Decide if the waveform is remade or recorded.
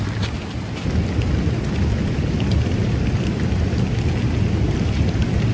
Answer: recorded